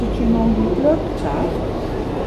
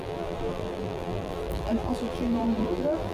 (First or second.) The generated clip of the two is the second